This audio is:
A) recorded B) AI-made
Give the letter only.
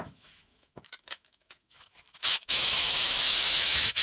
B